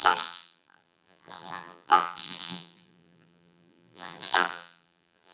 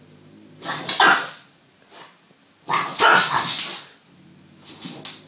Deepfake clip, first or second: first